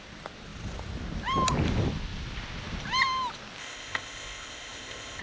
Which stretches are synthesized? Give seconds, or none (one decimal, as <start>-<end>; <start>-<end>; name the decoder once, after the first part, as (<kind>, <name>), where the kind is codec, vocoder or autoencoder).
3.6-5.2 (codec, ZipCodec)